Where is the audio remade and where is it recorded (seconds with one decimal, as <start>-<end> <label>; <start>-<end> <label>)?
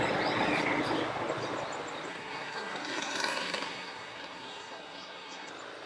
0.0-2.1 recorded; 2.1-5.5 remade; 5.5-5.9 recorded